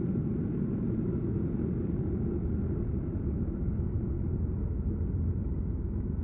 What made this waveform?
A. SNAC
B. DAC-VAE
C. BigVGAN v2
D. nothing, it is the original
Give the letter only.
D